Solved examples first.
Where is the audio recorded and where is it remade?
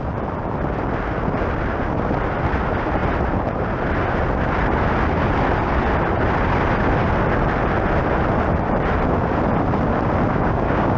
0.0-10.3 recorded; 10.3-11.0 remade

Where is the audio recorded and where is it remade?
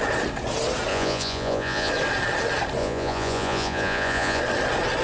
0.0-0.9 recorded; 0.9-1.9 remade; 1.9-2.8 recorded; 2.8-4.4 remade; 4.4-5.0 recorded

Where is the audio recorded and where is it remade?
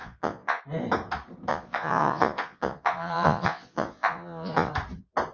0.0-0.6 remade; 0.6-1.5 recorded; 1.5-4.7 remade; 4.7-5.3 recorded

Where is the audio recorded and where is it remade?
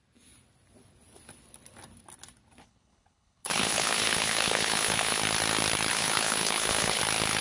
0.0-2.6 recorded; 2.6-5.2 remade; 5.2-5.9 recorded; 5.9-7.0 remade; 7.0-7.4 recorded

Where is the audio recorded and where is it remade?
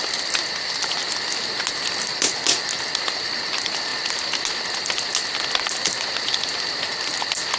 0.0-7.6 recorded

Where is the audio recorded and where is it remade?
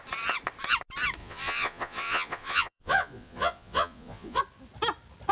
0.0-1.2 recorded; 1.2-4.4 remade; 4.4-5.3 recorded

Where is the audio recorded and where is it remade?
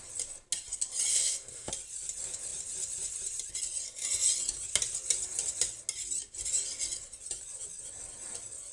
0.0-1.1 recorded; 1.1-1.7 remade; 1.7-8.7 recorded